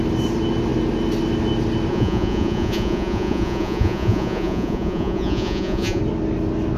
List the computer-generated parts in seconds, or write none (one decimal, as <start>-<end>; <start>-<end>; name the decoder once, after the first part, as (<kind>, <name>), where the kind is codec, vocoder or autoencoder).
1.9-6.0 (vocoder, Vocos)